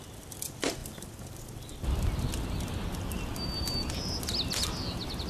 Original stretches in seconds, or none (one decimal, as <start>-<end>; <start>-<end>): 0.0-5.3